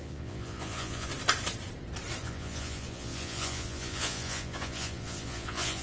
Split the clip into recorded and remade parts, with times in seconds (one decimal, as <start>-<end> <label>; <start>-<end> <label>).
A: 0.0-1.1 remade; 1.1-2.2 recorded; 2.2-5.8 remade